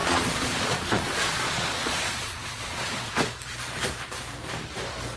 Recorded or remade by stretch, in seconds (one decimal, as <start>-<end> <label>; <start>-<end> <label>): 0.0-3.1 remade; 3.1-5.2 recorded